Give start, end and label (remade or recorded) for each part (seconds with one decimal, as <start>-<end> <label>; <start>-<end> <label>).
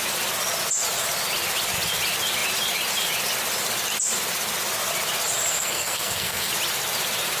0.0-5.5 recorded; 5.5-6.5 remade; 6.5-7.4 recorded